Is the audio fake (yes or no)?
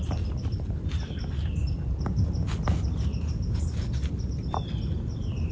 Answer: no